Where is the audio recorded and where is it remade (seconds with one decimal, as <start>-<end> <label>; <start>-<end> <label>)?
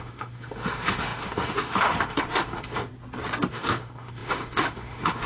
0.0-2.9 remade; 2.9-3.5 recorded; 3.5-5.3 remade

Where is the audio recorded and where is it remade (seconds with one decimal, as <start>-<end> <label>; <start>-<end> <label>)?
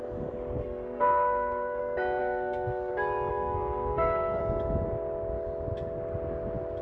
0.0-0.6 recorded; 0.6-1.8 remade; 1.8-2.2 recorded; 2.2-2.9 remade; 2.9-3.3 recorded; 3.3-4.4 remade; 4.4-6.8 recorded